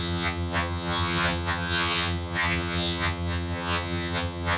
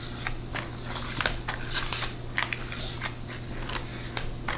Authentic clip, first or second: second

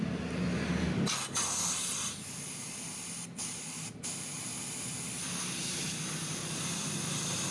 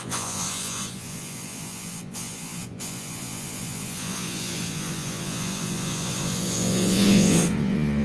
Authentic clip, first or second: first